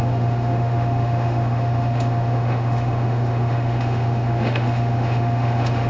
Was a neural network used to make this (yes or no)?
yes